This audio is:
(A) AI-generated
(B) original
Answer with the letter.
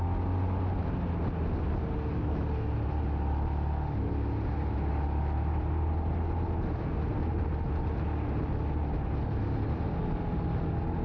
B